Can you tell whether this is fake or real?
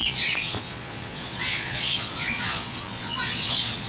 fake